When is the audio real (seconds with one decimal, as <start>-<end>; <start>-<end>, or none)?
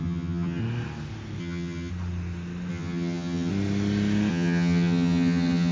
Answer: 0.6-1.4; 1.9-2.7; 3.5-4.3